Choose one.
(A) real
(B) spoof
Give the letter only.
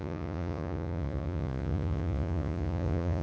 B